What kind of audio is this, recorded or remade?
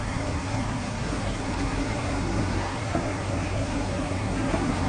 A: remade